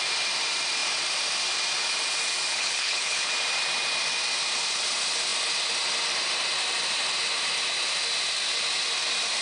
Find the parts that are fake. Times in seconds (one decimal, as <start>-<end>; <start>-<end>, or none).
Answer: 2.5-3.3